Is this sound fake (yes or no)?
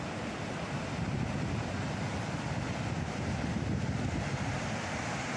no